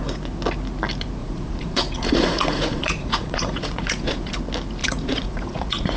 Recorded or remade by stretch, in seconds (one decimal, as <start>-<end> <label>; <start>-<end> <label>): 0.0-1.2 recorded; 1.2-4.3 remade; 4.3-4.8 recorded; 4.8-6.0 remade